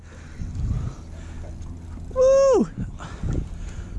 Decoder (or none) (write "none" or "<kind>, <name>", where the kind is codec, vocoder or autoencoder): none